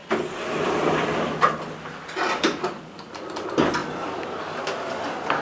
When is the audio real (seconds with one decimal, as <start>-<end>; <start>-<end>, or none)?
0.0-5.4